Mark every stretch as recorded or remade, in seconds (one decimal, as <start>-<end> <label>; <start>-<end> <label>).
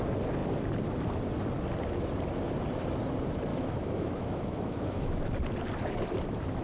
0.0-3.5 recorded; 3.5-5.2 remade; 5.2-6.6 recorded